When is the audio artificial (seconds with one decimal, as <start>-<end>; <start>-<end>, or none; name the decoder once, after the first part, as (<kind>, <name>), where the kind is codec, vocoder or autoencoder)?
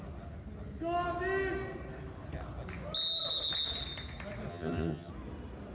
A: 4.5-5.1 (vocoder, HiFi-GAN)